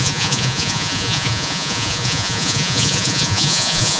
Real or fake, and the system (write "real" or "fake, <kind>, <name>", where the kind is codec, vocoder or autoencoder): fake, vocoder, Vocos